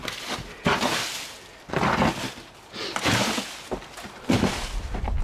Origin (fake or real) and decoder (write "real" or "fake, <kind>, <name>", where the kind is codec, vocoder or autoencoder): real